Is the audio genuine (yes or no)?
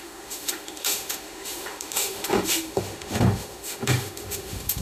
no